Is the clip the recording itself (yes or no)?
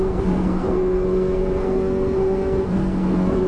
no